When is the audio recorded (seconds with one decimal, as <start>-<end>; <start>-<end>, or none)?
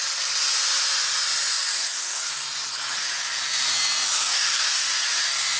0.0-1.5; 2.3-4.2; 4.8-5.6